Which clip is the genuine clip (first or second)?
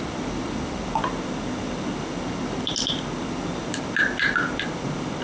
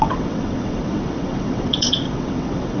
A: first